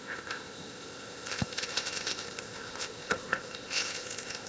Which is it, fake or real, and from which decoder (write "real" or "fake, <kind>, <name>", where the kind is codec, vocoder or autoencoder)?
fake, codec, ZipCodec